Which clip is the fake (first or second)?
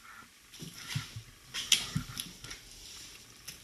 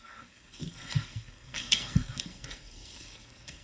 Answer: second